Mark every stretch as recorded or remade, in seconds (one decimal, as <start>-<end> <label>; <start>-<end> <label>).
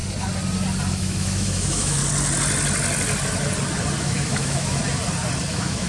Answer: 0.0-0.9 recorded; 0.9-2.0 remade; 2.0-4.0 recorded; 4.0-4.8 remade; 4.8-5.5 recorded; 5.5-5.9 remade